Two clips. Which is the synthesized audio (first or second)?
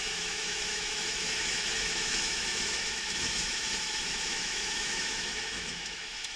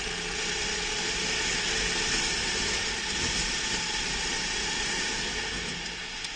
first